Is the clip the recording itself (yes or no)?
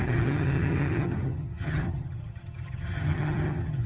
no